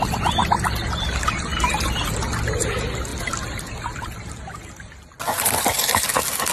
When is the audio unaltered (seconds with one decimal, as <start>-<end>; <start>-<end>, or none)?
0.0-6.5